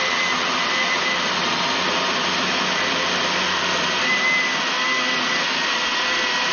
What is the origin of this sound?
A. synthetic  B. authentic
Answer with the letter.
B